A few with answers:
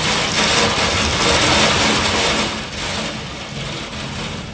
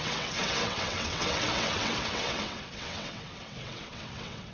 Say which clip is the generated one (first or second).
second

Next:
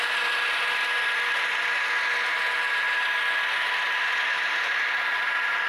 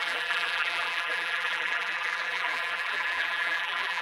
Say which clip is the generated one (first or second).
second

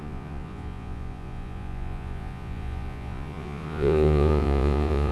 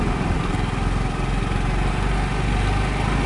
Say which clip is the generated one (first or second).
first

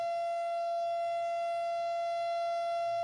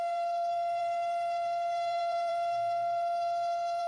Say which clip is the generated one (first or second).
second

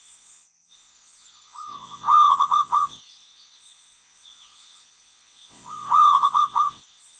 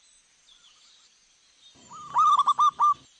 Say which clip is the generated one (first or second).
first